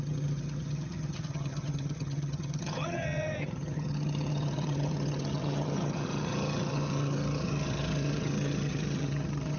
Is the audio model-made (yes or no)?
yes